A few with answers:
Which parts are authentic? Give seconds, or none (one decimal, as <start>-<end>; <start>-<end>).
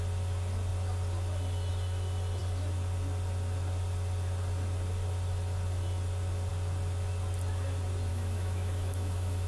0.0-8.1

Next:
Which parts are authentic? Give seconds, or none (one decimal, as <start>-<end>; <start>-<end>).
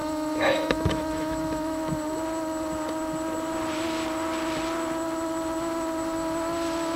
1.9-7.0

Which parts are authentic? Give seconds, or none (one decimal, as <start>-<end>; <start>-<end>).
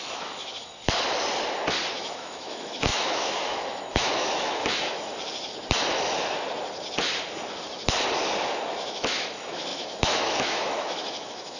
0.7-1.9; 5.1-8.7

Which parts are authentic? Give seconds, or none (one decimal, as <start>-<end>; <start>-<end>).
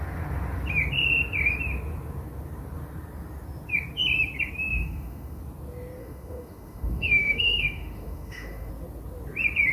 0.0-4.7; 5.4-6.0; 8.7-9.7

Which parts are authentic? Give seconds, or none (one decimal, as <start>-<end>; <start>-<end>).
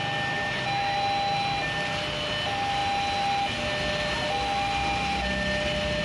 0.0-6.0